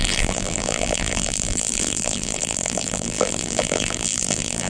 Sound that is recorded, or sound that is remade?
remade